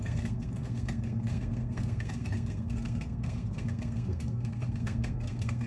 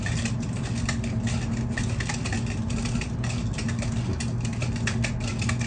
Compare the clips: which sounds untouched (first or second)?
second